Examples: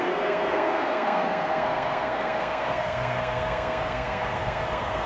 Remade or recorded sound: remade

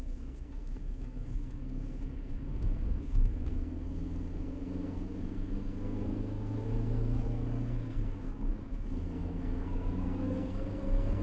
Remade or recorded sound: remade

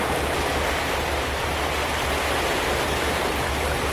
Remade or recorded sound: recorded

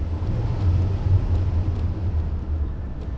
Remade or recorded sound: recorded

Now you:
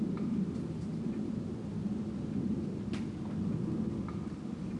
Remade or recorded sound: recorded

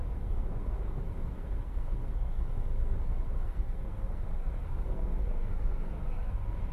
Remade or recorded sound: remade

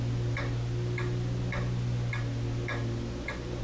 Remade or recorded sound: recorded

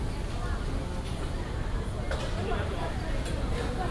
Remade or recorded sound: recorded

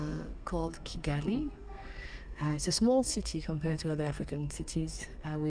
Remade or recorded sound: remade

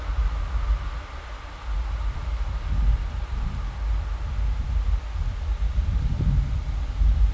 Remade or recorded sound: recorded